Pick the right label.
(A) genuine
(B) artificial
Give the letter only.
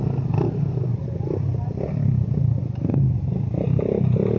A